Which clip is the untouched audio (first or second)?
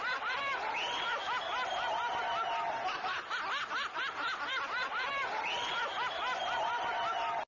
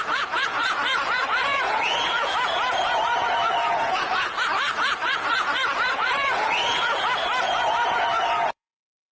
first